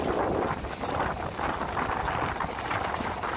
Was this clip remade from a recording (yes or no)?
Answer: no